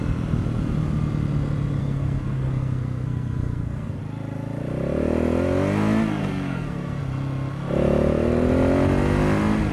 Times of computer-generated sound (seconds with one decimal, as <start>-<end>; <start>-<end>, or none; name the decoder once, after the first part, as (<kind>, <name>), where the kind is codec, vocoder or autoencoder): 1.8-4.0 (codec, SNAC); 6.2-7.0